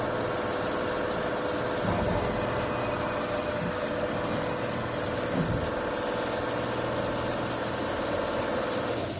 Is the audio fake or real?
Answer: real